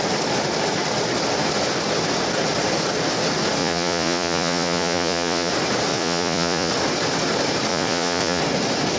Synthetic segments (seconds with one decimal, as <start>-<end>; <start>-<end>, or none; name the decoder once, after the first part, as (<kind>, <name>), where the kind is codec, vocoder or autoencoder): 3.6-5.5 (vocoder, Vocos); 5.9-6.7; 7.7-8.4